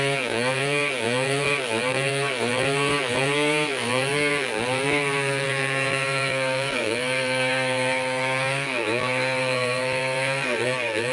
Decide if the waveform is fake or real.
fake